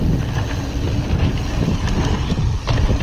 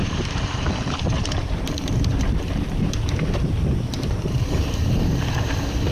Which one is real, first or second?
first